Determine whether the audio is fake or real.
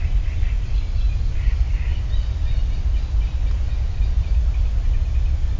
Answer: real